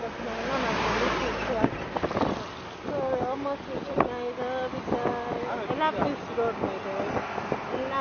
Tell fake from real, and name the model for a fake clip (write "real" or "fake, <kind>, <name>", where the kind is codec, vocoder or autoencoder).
real